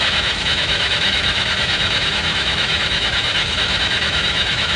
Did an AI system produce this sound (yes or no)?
yes